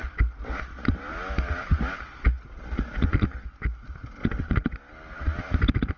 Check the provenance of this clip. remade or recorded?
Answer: recorded